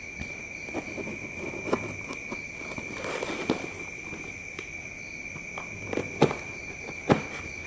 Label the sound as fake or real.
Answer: real